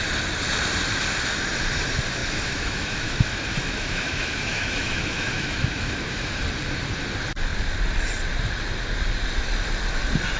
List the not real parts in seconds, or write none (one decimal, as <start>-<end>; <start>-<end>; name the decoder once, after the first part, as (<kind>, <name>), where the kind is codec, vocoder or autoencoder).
2.2-6.4 (autoencoder, DAC-VAE)